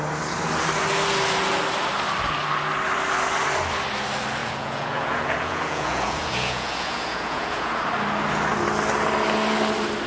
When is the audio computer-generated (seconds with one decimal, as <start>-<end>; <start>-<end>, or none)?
4.4-7.8